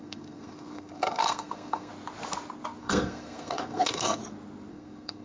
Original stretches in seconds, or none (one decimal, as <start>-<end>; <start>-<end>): 1.9-2.8; 4.2-4.7